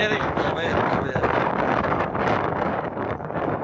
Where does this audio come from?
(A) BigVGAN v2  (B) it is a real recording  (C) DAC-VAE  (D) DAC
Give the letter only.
D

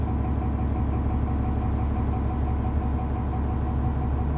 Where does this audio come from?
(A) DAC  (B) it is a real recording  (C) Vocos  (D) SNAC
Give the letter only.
B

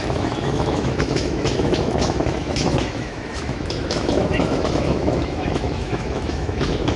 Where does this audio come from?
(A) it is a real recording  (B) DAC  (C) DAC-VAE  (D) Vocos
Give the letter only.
C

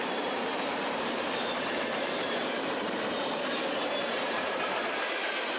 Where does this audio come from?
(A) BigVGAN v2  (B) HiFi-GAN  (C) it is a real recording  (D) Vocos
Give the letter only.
A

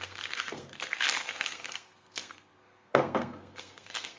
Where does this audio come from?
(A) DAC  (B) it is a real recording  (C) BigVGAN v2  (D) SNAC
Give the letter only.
D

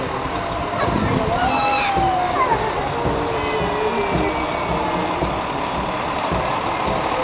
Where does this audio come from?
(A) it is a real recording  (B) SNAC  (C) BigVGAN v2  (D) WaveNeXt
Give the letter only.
A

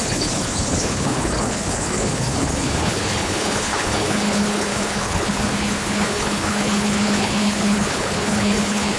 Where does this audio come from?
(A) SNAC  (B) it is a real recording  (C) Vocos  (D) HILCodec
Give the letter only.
D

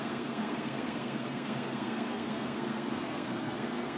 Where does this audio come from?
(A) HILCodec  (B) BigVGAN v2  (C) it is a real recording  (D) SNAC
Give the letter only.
D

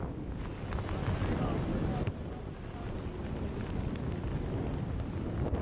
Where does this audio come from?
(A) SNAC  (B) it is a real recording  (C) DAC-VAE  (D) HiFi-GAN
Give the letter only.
B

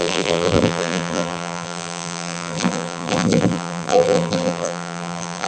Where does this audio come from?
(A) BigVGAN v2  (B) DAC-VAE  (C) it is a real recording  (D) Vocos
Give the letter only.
A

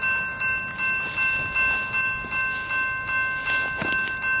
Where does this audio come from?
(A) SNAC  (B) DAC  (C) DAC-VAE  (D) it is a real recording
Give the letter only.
D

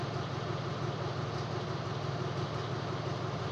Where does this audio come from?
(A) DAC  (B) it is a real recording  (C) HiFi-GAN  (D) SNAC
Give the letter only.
B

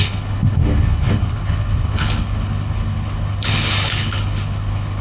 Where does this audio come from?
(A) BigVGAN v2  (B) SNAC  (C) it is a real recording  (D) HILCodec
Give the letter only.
D